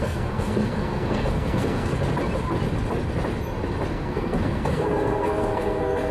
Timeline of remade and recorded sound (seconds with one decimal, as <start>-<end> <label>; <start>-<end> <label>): 0.0-1.9 remade; 1.9-3.9 recorded; 3.9-6.1 remade

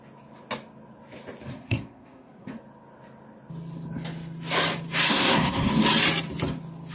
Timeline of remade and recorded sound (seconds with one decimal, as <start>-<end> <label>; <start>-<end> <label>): 0.0-1.5 recorded; 1.5-2.5 remade; 2.5-5.1 recorded; 5.1-5.7 remade; 5.7-6.9 recorded

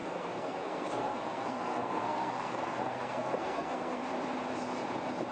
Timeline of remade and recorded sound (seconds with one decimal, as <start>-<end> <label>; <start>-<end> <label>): 0.0-4.0 remade; 4.0-5.3 recorded

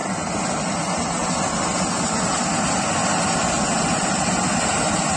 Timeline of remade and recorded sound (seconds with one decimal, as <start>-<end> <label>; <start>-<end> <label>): 0.0-5.2 recorded

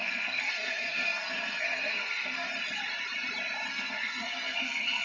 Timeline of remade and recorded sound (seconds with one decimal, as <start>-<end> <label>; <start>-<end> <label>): 0.0-2.5 remade; 2.5-3.7 recorded; 3.7-5.0 remade